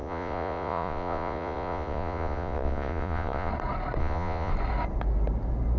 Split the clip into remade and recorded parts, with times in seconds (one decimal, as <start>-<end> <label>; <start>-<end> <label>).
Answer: 0.0-3.5 remade; 3.5-4.0 recorded; 4.0-4.5 remade; 4.5-5.8 recorded

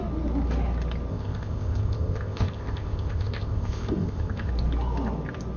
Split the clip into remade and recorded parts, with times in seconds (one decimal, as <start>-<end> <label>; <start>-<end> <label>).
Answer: 0.0-1.1 recorded; 1.1-4.5 remade; 4.5-5.6 recorded

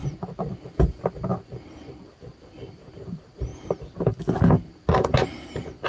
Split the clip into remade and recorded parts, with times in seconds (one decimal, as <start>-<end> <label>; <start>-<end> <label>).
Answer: 0.0-5.9 recorded

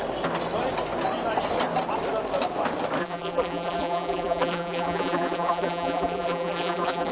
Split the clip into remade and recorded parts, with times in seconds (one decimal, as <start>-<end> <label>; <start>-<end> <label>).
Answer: 0.0-3.0 recorded; 3.0-7.1 remade